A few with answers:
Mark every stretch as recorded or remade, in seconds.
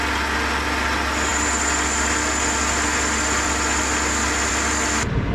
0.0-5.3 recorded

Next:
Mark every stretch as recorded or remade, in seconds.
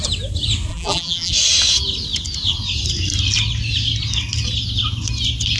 0.0-0.7 recorded; 0.7-1.3 remade; 1.3-5.6 recorded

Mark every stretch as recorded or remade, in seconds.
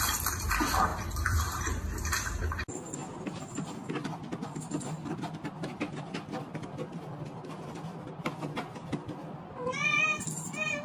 0.0-0.9 recorded; 0.9-2.4 remade; 2.4-10.8 recorded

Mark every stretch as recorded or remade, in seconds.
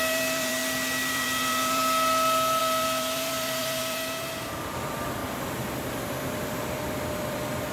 0.0-0.6 remade; 0.6-1.1 recorded; 1.1-1.8 remade; 1.8-2.6 recorded; 2.6-5.2 remade; 5.2-5.9 recorded; 5.9-7.7 remade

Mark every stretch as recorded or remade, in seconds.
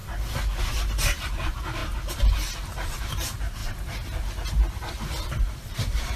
0.0-0.6 recorded; 0.6-1.8 remade; 1.8-3.1 recorded; 3.1-3.6 remade; 3.6-5.4 recorded; 5.4-6.2 remade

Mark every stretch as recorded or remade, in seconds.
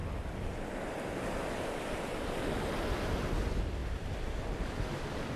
0.0-1.8 remade; 1.8-3.8 recorded; 3.8-5.4 remade